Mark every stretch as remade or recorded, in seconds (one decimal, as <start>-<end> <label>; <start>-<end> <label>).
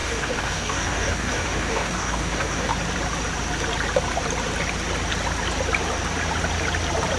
0.0-2.7 remade; 2.7-7.2 recorded